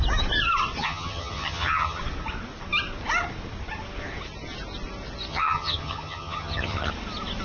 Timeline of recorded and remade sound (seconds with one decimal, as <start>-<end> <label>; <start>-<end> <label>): 0.0-0.8 recorded; 0.8-2.0 remade; 2.0-5.3 recorded; 5.3-6.9 remade; 6.9-7.4 recorded